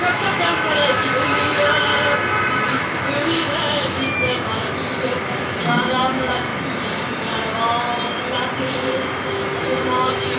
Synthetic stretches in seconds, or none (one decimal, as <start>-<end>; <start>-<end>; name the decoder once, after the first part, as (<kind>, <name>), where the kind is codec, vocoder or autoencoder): 0.0-1.9 (autoencoder, DAC-VAE); 2.7-4.6; 5.4-6.5; 9.3-10.4